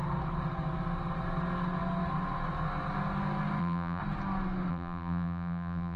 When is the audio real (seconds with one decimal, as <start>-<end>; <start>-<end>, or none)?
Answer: 0.0-3.6; 4.0-4.7